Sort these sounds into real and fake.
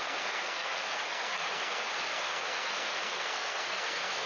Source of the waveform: fake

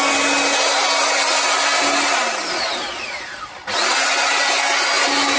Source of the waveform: real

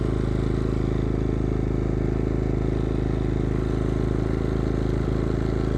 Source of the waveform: real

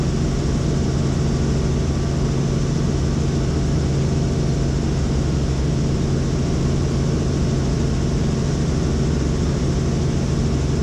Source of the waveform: real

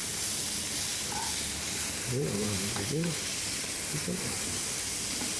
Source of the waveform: real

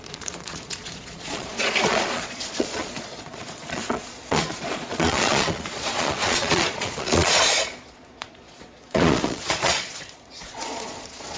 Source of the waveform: fake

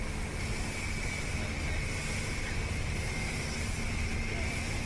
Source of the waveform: real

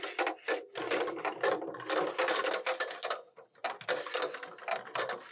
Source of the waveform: real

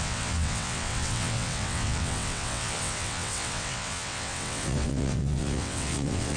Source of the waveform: fake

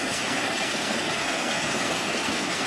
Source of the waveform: fake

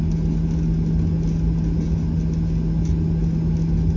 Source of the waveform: real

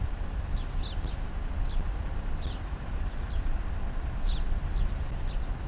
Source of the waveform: real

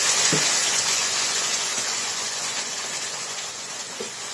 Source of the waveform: fake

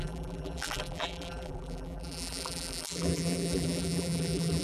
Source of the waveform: fake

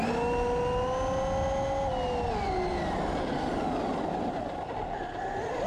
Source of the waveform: real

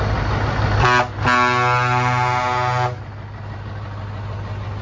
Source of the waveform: real